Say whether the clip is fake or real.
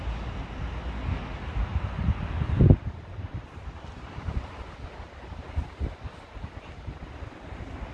real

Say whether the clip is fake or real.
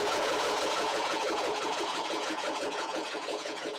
fake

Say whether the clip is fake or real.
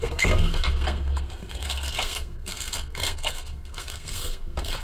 fake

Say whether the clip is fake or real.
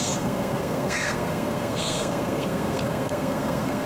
fake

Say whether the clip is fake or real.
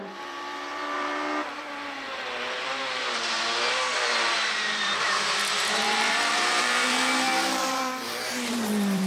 fake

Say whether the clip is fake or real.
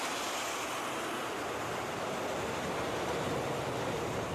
real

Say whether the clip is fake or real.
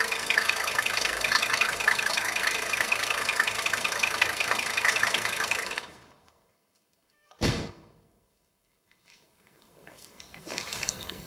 fake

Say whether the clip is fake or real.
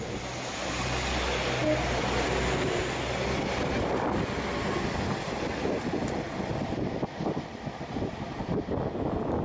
real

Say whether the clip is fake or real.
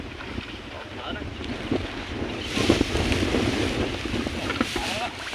fake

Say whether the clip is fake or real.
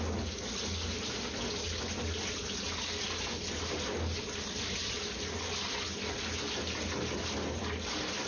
real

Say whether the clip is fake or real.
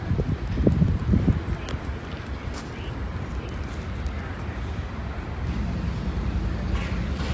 real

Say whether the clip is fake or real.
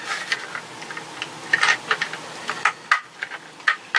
real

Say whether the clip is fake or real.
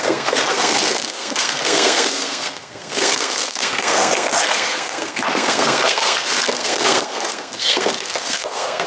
fake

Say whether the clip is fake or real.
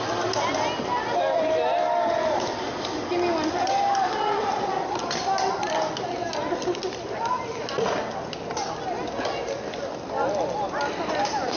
real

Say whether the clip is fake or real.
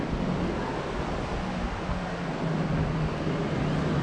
real